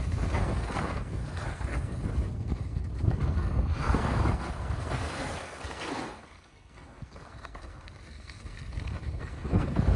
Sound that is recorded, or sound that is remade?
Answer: remade